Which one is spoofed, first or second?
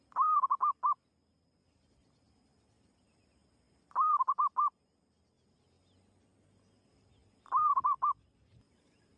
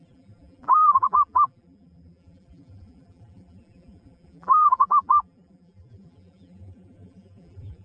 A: second